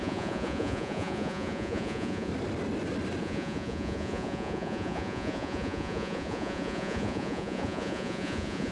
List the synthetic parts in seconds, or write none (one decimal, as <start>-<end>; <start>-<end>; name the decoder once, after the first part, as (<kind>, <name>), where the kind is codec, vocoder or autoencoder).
0.0-2.3 (vocoder, Vocos); 3.2-8.7